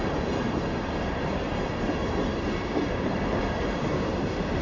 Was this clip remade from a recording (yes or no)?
yes